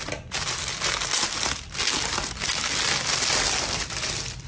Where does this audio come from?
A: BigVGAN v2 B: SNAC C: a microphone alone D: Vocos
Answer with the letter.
C